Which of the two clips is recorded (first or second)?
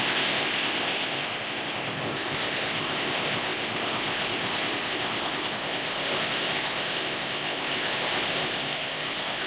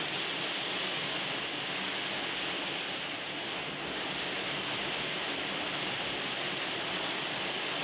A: second